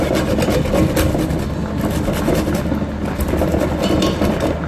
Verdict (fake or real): real